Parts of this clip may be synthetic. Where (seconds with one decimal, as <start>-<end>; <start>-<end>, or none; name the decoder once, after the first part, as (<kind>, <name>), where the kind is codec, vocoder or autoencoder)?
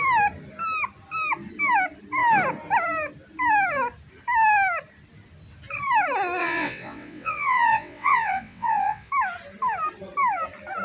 6.4-9.1 (vocoder, WaveNeXt)